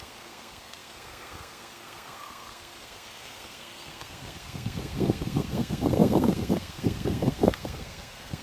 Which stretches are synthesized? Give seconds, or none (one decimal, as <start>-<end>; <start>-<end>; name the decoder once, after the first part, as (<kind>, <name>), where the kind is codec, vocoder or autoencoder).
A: 0.0-8.4 (codec, SNAC)